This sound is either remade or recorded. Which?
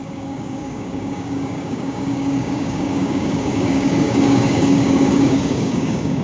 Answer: remade